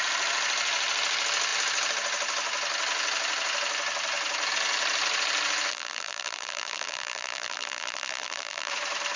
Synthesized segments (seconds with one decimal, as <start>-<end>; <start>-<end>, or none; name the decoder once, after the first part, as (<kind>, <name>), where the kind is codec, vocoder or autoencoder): 5.7-8.7 (vocoder, BigVGAN v2)